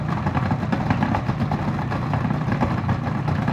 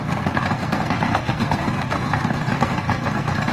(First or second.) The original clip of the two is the first